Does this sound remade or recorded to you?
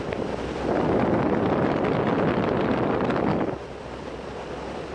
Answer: recorded